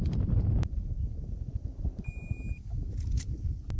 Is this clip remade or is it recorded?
recorded